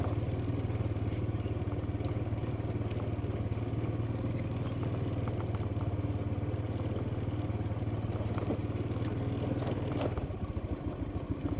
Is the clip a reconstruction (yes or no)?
no